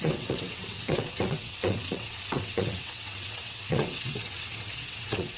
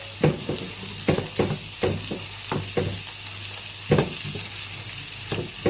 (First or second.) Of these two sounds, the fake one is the first